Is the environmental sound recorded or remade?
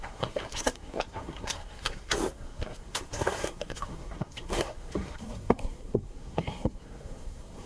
remade